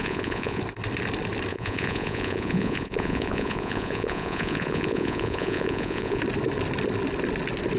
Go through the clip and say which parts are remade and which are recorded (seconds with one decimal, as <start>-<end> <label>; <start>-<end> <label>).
0.0-0.6 remade; 0.6-1.5 recorded; 1.5-6.2 remade; 6.2-7.8 recorded

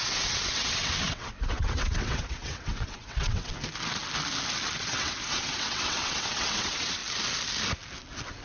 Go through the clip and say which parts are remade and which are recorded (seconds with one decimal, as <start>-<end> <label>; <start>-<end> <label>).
0.0-3.5 remade; 3.5-4.8 recorded; 4.8-7.0 remade; 7.0-8.4 recorded

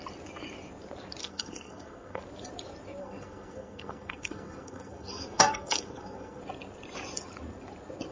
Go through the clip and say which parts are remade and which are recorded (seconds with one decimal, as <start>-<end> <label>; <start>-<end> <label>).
0.0-1.2 recorded; 1.2-2.2 remade; 2.2-3.0 recorded; 3.0-6.4 remade; 6.4-8.1 recorded

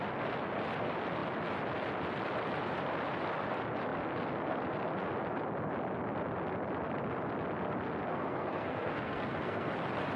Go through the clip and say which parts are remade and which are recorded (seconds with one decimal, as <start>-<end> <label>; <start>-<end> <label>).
0.0-8.1 recorded; 8.1-9.7 remade; 9.7-10.2 recorded

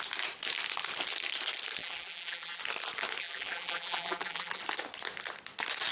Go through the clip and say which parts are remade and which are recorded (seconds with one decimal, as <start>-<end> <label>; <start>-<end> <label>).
0.0-1.8 recorded; 1.8-2.6 remade; 2.6-3.2 recorded; 3.2-4.6 remade; 4.6-5.9 recorded